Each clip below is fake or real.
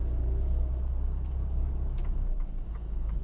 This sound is fake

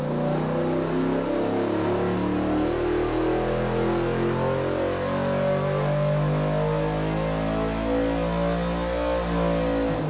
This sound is real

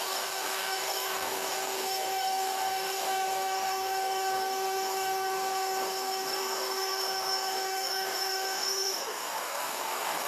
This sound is fake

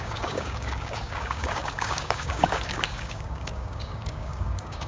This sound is fake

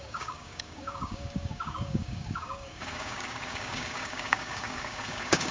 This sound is fake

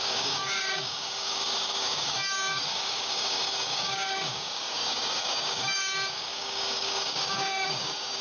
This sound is fake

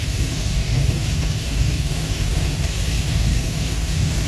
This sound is fake